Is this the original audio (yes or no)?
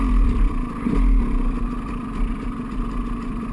no